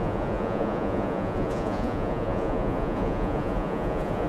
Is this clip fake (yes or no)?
yes